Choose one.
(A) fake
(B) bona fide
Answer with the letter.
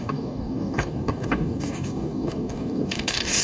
A